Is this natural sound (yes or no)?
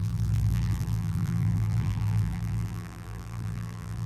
no